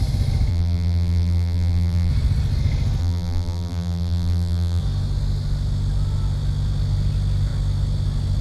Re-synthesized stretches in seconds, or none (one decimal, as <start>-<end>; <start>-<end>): 0.5-2.1; 3.0-4.8